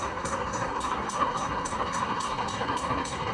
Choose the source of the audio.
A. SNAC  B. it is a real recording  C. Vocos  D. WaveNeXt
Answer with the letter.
A